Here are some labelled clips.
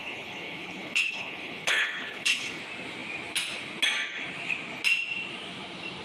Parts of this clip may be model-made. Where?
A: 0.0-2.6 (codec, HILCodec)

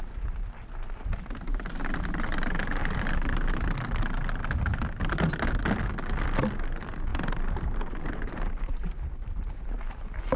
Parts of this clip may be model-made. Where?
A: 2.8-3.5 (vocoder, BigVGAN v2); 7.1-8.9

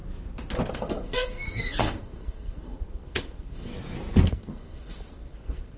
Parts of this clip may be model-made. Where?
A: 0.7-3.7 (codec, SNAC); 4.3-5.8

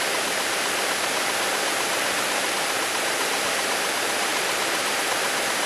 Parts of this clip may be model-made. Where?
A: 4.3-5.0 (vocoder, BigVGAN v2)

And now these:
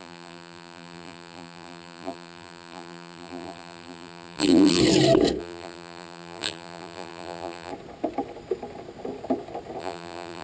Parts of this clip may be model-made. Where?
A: 0.0-4.8 (vocoder, BigVGAN v2); 5.4-7.7; 9.8-10.4